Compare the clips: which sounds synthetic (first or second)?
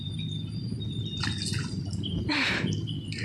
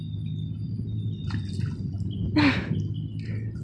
first